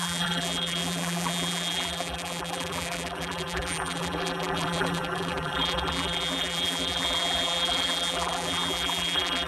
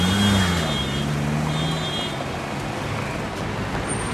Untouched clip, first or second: second